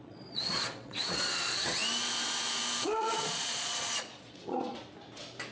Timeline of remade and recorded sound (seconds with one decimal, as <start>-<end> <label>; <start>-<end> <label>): 0.0-1.8 remade; 1.8-2.8 recorded; 2.8-4.8 remade; 4.8-5.5 recorded